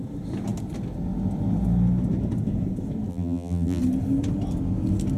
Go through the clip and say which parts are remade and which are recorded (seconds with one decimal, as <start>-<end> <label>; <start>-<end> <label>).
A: 0.0-3.1 recorded; 3.1-3.8 remade; 3.8-5.2 recorded